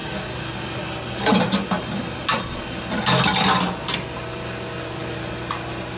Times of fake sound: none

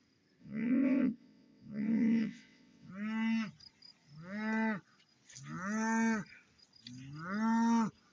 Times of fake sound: 0.4-2.9 (vocoder, WaveNeXt)

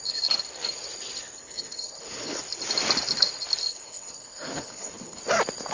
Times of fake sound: 1.4-2.4 (codec, HILCodec); 3.7-5.2